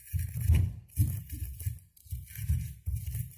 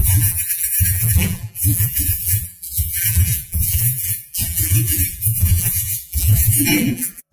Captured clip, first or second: first